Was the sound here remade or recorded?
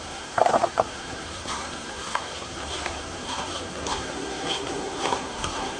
remade